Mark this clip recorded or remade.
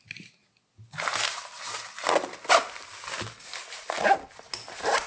recorded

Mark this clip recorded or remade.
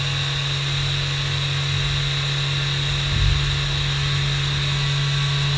recorded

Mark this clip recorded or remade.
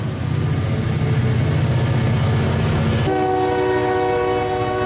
recorded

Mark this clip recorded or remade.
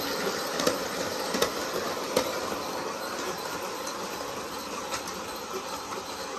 recorded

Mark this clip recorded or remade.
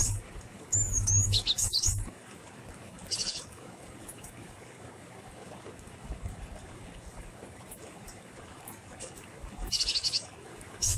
remade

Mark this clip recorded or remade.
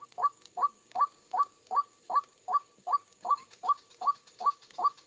remade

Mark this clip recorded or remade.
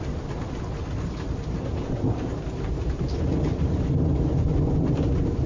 recorded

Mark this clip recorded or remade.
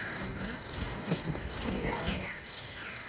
remade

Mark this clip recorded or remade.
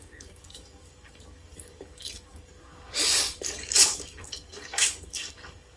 remade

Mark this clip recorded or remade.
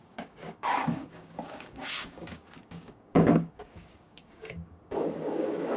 remade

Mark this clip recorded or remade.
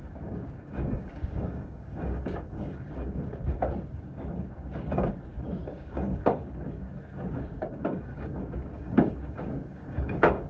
remade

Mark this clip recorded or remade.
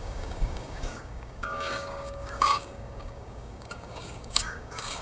remade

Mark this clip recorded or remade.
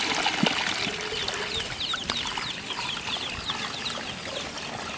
recorded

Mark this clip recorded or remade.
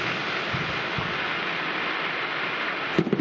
recorded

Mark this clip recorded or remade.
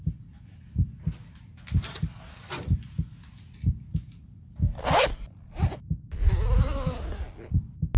recorded